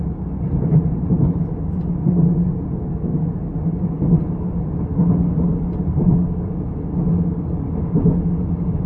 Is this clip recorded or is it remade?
recorded